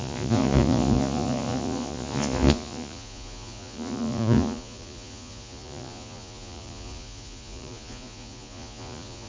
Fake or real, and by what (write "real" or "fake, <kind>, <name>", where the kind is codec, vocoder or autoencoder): fake, vocoder, Vocos